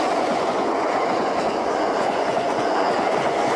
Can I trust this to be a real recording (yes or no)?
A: no